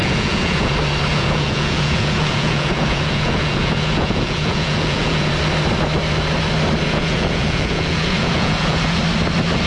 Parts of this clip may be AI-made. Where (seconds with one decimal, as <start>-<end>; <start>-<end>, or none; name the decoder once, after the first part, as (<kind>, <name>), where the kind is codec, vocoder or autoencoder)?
0.0-0.7 (vocoder, Vocos); 1.1-5.3; 6.8-9.0